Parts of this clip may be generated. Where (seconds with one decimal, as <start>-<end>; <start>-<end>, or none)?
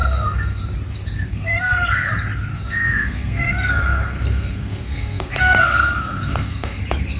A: 0.0-0.6; 1.3-2.1; 2.5-6.8